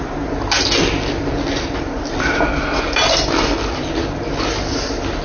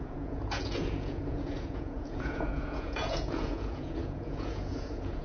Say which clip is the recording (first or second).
first